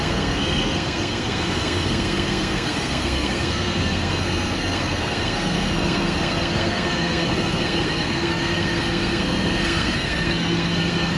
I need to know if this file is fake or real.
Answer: fake